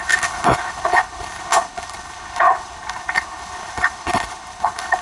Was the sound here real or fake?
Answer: fake